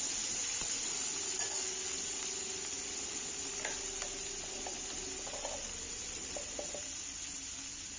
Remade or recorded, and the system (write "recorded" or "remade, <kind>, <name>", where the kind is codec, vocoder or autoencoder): recorded